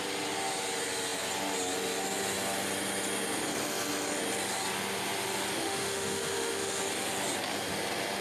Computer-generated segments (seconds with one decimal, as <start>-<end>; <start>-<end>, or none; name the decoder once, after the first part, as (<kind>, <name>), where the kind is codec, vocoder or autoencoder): 5.6-6.8 (autoencoder, DAC-VAE)

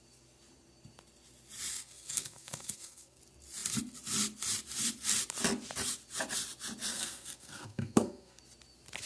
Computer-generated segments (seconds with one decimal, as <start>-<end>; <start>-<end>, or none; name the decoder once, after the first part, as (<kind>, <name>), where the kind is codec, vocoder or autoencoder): 1.7-3.2 (codec, SNAC); 6.9-8.4

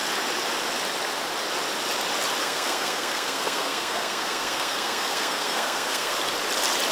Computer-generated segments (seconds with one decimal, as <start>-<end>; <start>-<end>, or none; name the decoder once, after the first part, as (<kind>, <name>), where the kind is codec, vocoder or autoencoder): 2.4-6.2 (codec, SNAC)

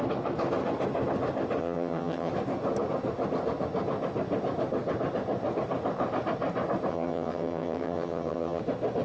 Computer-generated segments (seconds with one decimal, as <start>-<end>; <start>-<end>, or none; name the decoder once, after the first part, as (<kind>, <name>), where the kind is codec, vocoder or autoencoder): 1.6-2.3 (vocoder, HiFi-GAN); 6.9-8.6

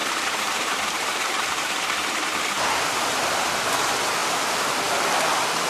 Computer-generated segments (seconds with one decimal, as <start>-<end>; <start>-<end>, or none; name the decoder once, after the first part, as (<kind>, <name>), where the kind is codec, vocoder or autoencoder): 0.0-2.9 (vocoder, BigVGAN v2); 4.2-4.8

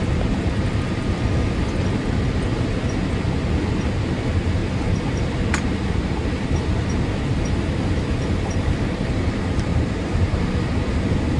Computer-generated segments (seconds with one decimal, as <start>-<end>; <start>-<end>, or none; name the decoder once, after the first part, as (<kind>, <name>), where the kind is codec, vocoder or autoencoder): 2.5-3.0 (vocoder, BigVGAN v2); 4.6-5.2; 9.7-10.5

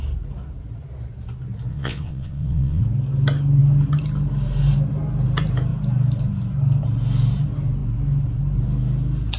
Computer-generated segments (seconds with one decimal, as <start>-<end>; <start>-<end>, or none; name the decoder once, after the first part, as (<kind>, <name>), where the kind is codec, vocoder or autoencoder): 1.7-2.8 (vocoder, WaveNeXt)

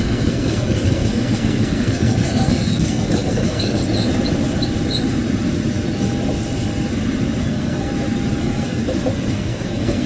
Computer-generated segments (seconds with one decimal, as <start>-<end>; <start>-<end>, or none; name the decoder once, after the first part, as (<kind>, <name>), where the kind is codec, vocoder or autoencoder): 0.0-3.8 (codec, SNAC); 7.4-7.9; 8.4-8.8; 9.3-10.1